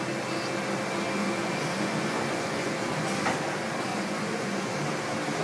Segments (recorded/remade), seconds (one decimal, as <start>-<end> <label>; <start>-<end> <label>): 0.0-1.2 recorded; 1.2-3.1 remade; 3.1-3.9 recorded; 3.9-4.7 remade; 4.7-5.4 recorded